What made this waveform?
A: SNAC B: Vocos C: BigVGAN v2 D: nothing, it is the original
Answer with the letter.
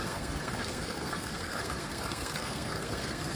A